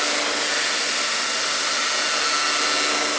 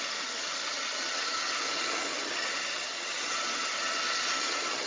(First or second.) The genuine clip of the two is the first